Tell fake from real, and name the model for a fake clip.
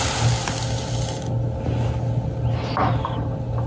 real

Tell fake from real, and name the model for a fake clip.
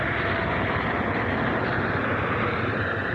real